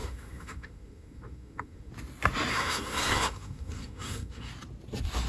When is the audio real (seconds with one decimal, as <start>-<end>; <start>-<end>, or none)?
1.9-2.5; 4.5-5.3